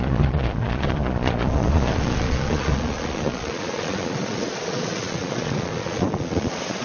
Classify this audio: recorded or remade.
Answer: remade